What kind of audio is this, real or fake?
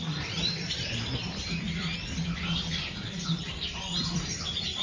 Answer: fake